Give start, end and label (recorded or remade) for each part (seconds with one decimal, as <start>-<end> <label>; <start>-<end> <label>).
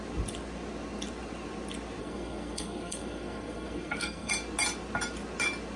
0.0-2.0 recorded; 2.0-4.3 remade; 4.3-5.8 recorded